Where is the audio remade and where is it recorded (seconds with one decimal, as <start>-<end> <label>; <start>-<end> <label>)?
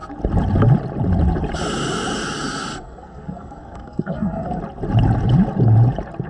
0.0-2.7 recorded; 2.7-4.6 remade; 4.6-6.3 recorded